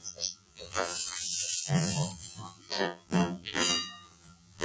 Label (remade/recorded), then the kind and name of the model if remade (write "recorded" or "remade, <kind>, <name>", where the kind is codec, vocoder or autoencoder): remade, vocoder, BigVGAN v2